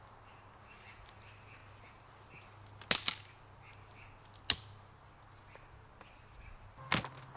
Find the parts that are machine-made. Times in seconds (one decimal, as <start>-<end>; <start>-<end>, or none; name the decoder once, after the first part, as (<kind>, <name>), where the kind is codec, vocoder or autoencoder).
none